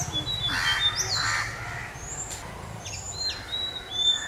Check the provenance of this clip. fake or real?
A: real